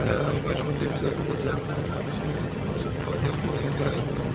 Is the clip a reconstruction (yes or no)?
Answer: yes